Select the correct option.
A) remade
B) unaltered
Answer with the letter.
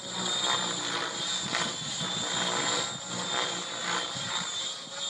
B